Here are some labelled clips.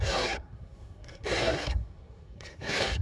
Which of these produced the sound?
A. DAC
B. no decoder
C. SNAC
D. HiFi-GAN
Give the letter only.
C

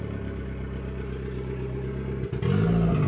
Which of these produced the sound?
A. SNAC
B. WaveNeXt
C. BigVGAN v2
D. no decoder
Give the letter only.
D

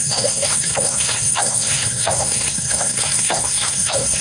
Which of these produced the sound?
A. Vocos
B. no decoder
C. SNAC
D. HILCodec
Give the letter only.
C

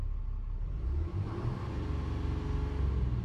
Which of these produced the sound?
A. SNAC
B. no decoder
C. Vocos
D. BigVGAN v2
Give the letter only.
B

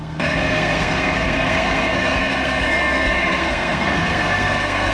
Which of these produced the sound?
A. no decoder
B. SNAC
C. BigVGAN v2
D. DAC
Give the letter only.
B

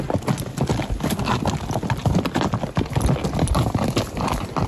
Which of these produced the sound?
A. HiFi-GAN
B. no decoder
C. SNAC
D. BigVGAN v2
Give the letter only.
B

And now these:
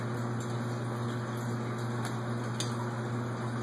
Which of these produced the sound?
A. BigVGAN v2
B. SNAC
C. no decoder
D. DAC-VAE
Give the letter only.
C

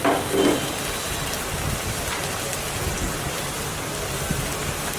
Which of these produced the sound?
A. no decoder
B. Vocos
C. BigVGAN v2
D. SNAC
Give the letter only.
A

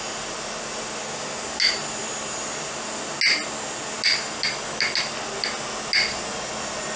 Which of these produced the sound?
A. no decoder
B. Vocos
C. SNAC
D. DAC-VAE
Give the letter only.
A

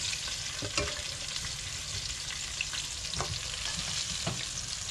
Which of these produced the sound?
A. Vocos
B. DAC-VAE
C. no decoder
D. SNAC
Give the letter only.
C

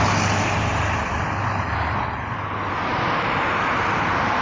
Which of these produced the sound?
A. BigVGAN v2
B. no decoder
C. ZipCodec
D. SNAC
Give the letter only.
B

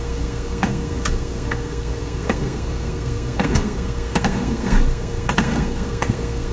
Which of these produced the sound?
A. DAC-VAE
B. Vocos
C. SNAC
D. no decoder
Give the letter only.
C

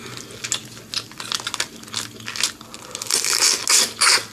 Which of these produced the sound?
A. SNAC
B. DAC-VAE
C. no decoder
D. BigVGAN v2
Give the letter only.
C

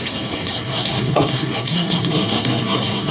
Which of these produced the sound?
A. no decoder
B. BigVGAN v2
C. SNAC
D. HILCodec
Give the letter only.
C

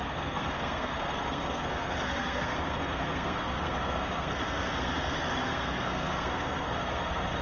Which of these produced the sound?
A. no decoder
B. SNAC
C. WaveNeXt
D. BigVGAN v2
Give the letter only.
B